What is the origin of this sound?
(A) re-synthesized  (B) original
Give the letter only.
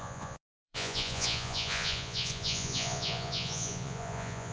A